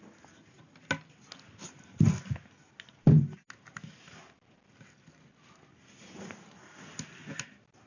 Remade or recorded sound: recorded